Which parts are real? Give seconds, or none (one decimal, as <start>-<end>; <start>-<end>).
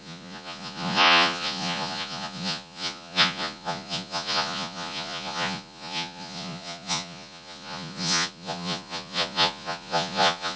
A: none